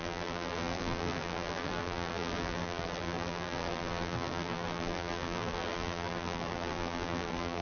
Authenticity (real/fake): fake